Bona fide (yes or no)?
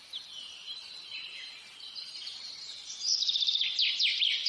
yes